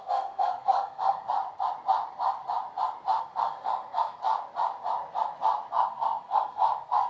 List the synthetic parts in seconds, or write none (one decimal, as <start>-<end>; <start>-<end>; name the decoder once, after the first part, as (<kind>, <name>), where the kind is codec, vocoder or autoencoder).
0.0-1.4 (codec, SNAC); 3.2-4.2; 5.7-7.1